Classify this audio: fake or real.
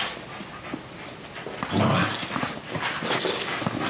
real